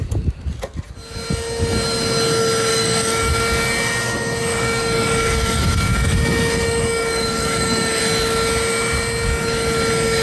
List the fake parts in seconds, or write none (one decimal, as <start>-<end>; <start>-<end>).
2.7-3.3; 4.5-8.0